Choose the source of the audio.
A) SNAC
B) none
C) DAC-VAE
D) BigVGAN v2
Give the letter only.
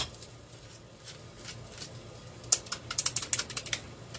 B